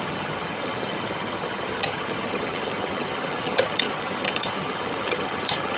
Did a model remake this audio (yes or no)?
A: yes